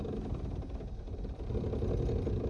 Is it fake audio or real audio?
real